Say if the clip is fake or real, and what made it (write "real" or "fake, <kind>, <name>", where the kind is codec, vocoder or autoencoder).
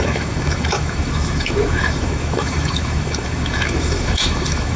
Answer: fake, autoencoder, DAC-VAE